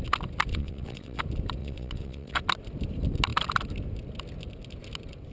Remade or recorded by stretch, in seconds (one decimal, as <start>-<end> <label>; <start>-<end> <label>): 0.0-0.5 recorded; 0.5-1.2 remade; 1.2-1.6 recorded; 1.6-2.4 remade; 2.4-5.3 recorded